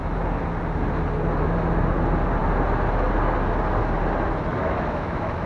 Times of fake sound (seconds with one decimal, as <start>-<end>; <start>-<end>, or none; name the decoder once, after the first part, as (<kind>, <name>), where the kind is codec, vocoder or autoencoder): 4.6-5.5 (autoencoder, DAC-VAE)

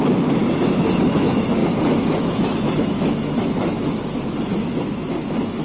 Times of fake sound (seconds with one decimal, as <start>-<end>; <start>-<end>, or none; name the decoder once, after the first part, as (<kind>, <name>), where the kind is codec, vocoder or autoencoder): 0.0-0.4 (autoencoder, DAC-VAE); 1.0-5.6

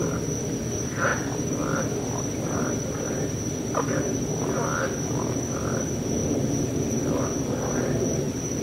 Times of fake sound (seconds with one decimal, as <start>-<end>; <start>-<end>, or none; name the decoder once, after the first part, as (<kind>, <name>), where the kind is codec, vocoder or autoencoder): 1.1-4.4 (vocoder, BigVGAN v2)

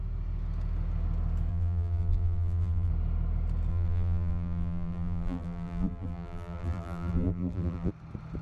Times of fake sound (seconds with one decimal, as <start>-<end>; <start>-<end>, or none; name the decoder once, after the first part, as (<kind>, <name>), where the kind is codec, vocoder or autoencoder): 1.5-2.9 (vocoder, BigVGAN v2); 3.7-7.9